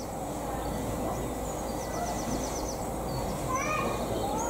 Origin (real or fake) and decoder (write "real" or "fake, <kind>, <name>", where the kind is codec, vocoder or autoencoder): real